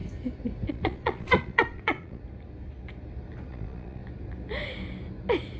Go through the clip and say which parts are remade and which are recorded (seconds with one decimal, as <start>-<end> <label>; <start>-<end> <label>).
0.0-0.7 recorded; 0.7-2.2 remade; 2.2-3.5 recorded; 3.5-4.0 remade; 4.0-5.6 recorded